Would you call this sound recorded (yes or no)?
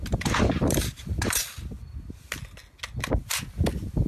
yes